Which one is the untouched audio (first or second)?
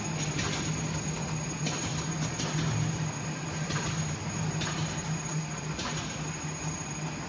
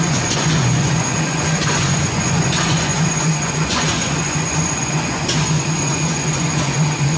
first